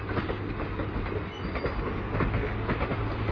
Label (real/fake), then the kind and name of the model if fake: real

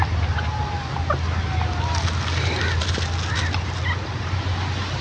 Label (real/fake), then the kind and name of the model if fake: real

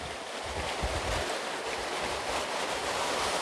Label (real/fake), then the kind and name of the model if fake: real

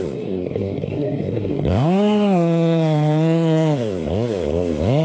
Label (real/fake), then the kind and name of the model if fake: fake, codec, SNAC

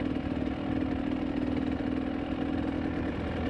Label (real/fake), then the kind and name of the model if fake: real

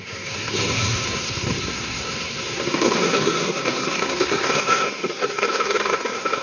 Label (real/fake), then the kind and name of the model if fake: fake, codec, SNAC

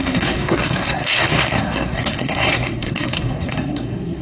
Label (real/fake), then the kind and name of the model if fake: fake, codec, SNAC